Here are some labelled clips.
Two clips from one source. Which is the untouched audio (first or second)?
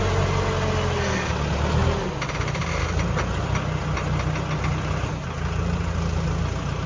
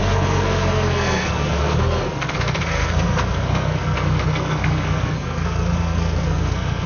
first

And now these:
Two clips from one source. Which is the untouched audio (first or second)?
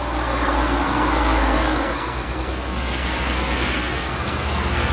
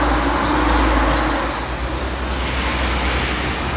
second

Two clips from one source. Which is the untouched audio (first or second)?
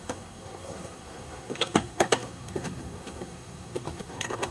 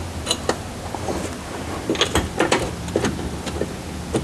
second